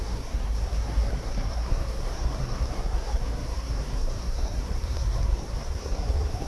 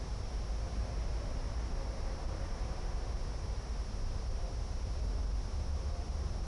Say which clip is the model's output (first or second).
first